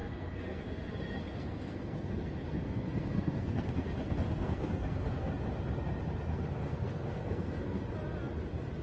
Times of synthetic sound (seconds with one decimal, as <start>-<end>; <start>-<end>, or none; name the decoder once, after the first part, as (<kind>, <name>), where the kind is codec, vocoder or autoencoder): 0.0-5.3 (codec, SNAC); 6.3-7.8